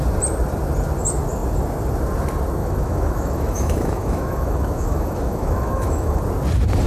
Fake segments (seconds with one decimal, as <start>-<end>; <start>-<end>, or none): 2.6-6.2

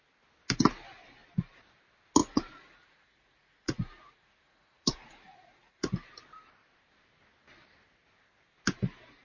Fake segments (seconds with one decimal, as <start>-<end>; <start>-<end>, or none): 2.2-5.9

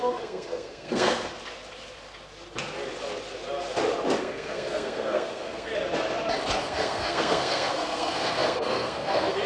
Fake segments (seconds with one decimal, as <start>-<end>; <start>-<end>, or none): 0.0-1.3; 4.2-5.7; 6.6-9.5

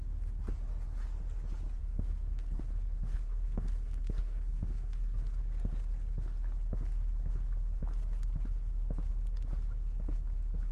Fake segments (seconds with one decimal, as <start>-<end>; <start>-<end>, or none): 1.8-2.6; 3.1-5.4

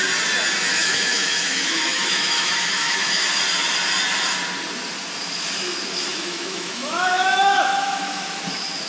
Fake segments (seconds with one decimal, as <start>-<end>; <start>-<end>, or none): 0.7-3.4; 6.1-8.4

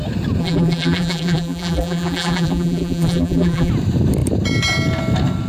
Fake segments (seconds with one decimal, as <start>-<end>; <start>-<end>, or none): 0.4-3.7

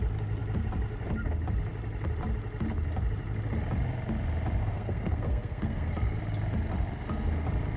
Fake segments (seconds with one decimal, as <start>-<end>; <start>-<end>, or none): 4.6-5.9